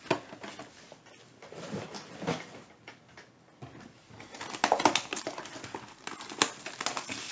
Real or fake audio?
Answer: real